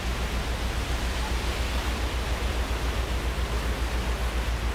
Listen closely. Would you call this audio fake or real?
real